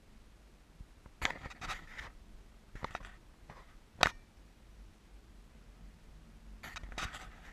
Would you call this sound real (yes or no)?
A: yes